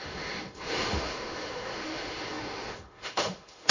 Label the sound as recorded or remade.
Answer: remade